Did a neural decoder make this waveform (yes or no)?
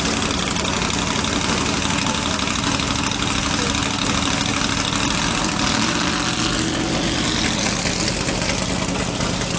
no